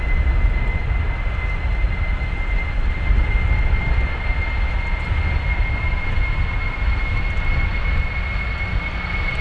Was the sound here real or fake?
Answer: real